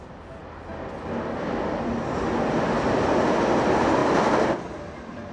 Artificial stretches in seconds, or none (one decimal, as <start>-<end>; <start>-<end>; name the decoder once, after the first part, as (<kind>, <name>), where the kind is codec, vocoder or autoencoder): none